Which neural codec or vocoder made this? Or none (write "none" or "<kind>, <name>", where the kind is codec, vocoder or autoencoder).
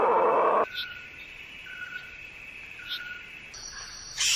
none